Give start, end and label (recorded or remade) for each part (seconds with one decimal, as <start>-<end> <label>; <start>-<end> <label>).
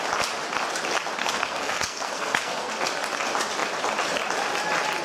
0.0-1.2 recorded; 1.2-2.7 remade; 2.7-5.0 recorded